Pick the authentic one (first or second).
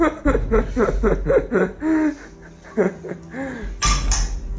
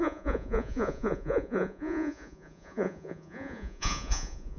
first